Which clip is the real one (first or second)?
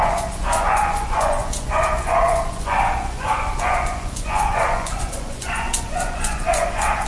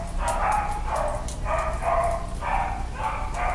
second